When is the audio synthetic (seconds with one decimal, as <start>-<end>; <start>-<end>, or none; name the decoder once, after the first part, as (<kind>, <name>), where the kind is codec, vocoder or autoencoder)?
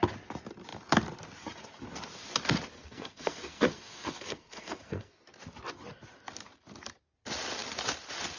2.7-5.2 (codec, SNAC)